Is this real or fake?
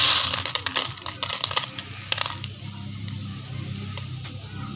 real